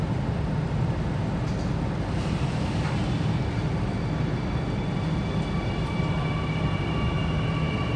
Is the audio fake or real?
real